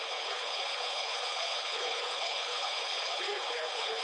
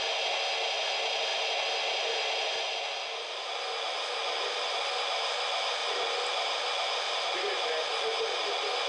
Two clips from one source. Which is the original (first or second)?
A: second